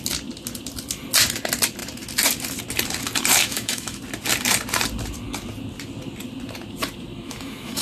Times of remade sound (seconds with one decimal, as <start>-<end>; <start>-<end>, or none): 3.4-4.0; 7.1-7.8